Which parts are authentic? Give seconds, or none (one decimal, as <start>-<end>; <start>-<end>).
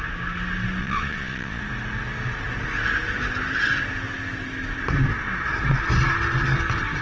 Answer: 0.0-0.8; 1.6-7.0